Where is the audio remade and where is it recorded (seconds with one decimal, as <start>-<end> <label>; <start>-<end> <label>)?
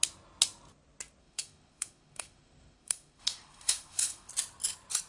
0.0-1.2 recorded; 1.2-4.3 remade; 4.3-5.1 recorded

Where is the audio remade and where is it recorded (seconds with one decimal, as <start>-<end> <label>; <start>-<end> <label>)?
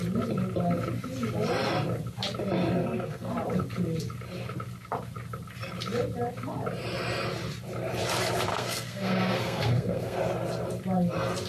0.0-2.8 recorded; 2.8-3.3 remade; 3.3-8.5 recorded; 8.5-10.2 remade; 10.2-11.5 recorded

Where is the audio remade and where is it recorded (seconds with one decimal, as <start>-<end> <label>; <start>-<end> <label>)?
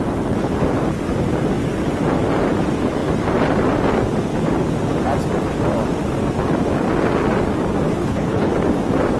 0.0-8.0 recorded; 8.0-8.5 remade; 8.5-9.2 recorded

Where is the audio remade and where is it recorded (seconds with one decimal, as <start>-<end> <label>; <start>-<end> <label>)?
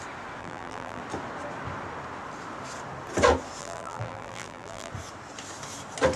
0.0-0.4 recorded; 0.4-1.0 remade; 1.0-3.6 recorded; 3.6-4.9 remade; 4.9-6.2 recorded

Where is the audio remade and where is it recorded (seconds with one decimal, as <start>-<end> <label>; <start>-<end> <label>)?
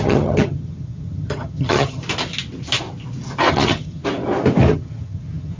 0.0-2.0 remade; 2.0-3.5 recorded; 3.5-4.0 remade; 4.0-4.7 recorded; 4.7-5.6 remade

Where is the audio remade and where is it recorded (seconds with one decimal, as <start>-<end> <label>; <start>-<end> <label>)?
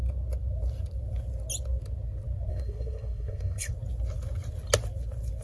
0.0-2.5 recorded; 2.5-3.7 remade; 3.7-5.4 recorded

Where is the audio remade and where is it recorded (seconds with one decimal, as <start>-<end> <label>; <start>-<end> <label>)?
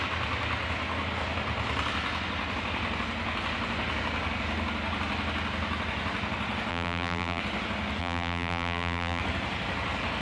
0.0-6.7 recorded; 6.7-7.4 remade; 7.4-8.0 recorded; 8.0-9.2 remade; 9.2-10.2 recorded